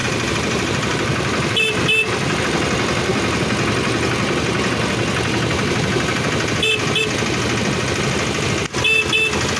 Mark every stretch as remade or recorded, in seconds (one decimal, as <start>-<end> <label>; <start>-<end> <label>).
0.0-2.4 remade; 2.4-9.6 recorded